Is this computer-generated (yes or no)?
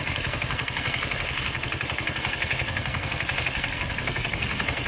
yes